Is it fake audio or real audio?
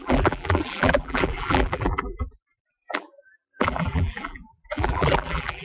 fake